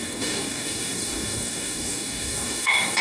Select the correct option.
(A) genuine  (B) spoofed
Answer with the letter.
B